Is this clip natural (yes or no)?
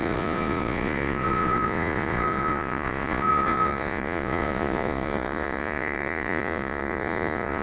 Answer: no